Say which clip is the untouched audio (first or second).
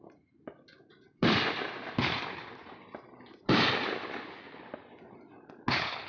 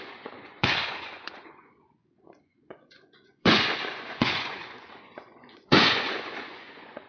first